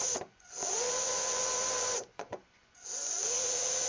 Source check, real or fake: fake